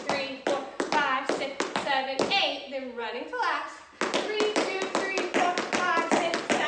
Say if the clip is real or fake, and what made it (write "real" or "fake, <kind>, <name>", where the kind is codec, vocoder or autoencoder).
real